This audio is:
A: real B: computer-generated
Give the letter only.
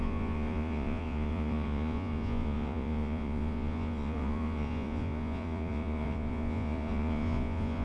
B